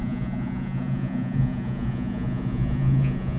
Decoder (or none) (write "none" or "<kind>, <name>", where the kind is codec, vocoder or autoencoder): vocoder, Vocos